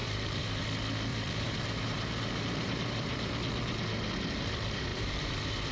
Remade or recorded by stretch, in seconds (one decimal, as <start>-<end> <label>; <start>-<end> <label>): 0.0-0.6 remade; 0.6-1.1 recorded; 1.1-3.3 remade; 3.3-4.9 recorded; 4.9-5.7 remade